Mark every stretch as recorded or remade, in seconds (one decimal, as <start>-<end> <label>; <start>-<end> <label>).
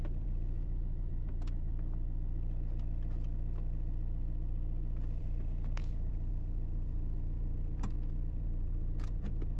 0.0-1.7 remade; 1.7-5.2 recorded; 5.2-9.6 remade